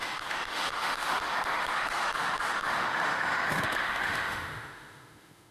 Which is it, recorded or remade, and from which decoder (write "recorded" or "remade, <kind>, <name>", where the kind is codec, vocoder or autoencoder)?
remade, autoencoder, DAC-VAE